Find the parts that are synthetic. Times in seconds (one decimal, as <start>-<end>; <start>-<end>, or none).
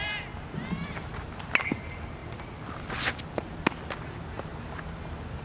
none